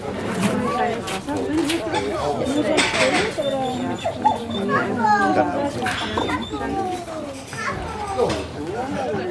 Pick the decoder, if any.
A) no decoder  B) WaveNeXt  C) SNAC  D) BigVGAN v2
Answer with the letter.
A